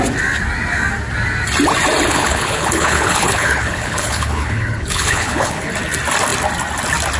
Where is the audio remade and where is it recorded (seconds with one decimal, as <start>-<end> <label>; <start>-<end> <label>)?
0.0-2.1 recorded; 2.1-5.7 remade; 5.7-7.2 recorded